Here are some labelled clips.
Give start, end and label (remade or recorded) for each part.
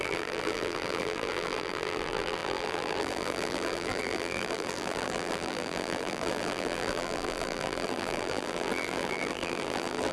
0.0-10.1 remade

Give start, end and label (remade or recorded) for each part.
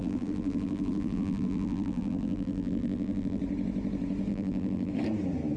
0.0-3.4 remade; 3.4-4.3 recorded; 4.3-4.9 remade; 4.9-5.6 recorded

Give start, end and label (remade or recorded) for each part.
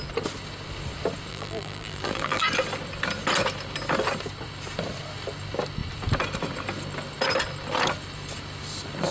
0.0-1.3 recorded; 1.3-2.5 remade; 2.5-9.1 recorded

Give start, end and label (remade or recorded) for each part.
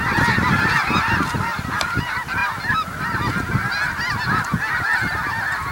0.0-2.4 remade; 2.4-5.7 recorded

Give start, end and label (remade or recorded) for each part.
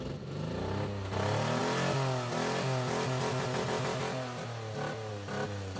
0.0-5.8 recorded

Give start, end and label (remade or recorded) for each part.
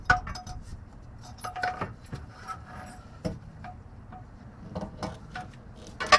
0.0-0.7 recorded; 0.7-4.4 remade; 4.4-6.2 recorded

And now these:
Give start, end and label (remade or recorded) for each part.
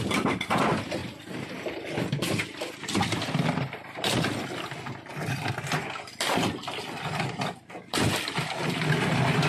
0.0-1.0 recorded; 1.0-4.4 remade; 4.4-9.5 recorded